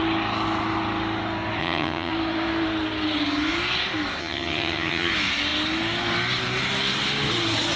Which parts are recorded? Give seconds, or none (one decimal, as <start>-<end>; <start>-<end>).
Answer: 0.0-1.6; 2.1-4.2; 5.1-7.8